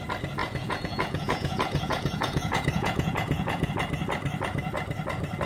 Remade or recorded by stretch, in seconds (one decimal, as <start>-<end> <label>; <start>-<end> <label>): 0.0-0.4 recorded; 0.4-3.7 remade; 3.7-5.5 recorded